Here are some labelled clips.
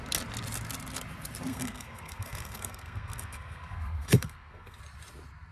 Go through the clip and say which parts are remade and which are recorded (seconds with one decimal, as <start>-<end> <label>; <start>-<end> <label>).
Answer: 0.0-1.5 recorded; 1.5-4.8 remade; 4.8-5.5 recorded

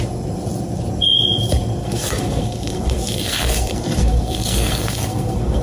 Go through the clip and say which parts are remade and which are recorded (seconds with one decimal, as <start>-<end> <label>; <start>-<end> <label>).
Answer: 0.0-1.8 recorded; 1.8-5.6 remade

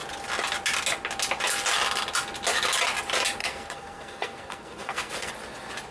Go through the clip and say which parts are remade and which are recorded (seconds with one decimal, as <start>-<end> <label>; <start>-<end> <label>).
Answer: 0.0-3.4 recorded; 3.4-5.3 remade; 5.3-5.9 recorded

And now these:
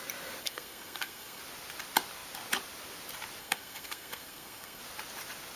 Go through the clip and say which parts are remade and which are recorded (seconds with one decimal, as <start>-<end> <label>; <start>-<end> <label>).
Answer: 0.0-0.4 recorded; 0.4-1.4 remade; 1.4-3.4 recorded; 3.4-4.8 remade; 4.8-5.6 recorded

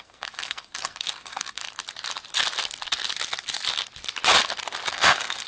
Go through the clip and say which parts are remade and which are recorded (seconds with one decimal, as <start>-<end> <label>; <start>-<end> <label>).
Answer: 0.0-1.6 remade; 1.6-4.9 recorded; 4.9-5.5 remade